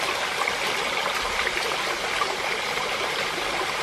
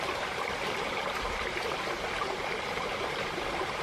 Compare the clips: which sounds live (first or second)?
first